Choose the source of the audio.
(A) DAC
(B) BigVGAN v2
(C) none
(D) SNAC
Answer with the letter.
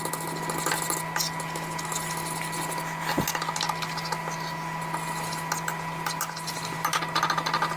C